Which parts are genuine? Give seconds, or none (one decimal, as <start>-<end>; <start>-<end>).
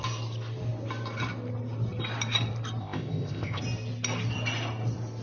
0.0-2.8; 3.6-5.2